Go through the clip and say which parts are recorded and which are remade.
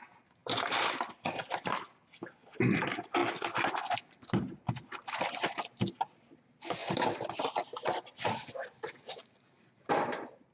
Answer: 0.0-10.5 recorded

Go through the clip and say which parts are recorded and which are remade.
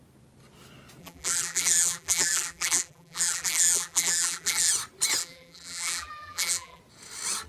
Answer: 0.0-1.0 recorded; 1.0-4.7 remade; 4.7-5.2 recorded; 5.2-6.8 remade; 6.8-7.5 recorded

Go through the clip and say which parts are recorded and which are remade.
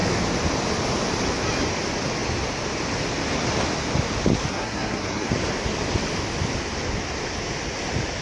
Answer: 0.0-4.5 recorded; 4.5-5.3 remade; 5.3-8.2 recorded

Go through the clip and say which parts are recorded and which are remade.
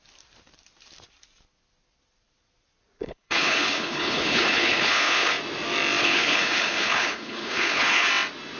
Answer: 0.0-3.0 recorded; 3.0-5.3 remade; 5.3-6.0 recorded; 6.0-8.1 remade; 8.1-8.6 recorded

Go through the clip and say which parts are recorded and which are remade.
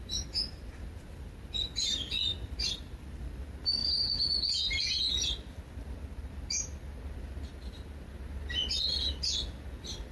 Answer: 0.0-10.1 recorded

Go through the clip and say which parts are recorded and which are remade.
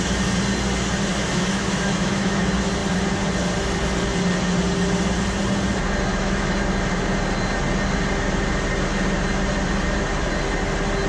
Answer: 0.0-1.1 recorded; 1.1-2.4 remade; 2.4-6.1 recorded; 6.1-6.6 remade; 6.6-11.1 recorded